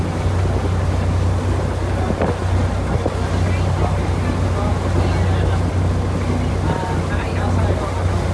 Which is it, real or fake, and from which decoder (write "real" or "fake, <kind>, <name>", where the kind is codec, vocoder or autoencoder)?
real